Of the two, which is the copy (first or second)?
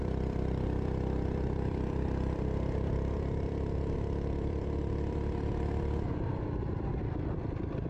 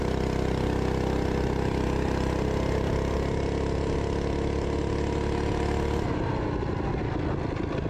first